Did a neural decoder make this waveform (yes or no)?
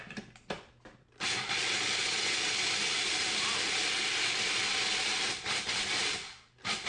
no